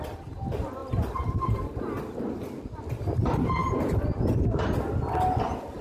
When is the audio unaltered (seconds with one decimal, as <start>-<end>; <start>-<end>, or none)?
0.0-5.8